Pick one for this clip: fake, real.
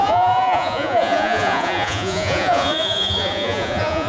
fake